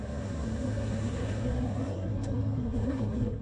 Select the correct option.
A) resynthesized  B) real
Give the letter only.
A